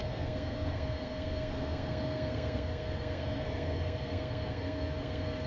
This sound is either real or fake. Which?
fake